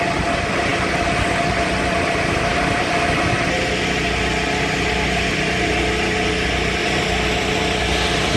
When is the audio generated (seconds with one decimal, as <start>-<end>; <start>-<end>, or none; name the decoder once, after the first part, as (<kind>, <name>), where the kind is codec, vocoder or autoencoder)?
2.5-3.4 (vocoder, BigVGAN v2); 6.8-7.8